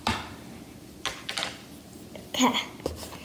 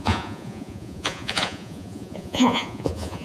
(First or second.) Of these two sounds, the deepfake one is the second